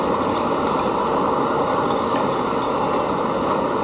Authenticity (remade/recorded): recorded